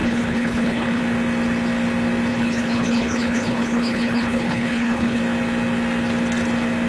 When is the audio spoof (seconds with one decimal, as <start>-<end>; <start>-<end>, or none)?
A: 0.0-1.0; 2.3-5.2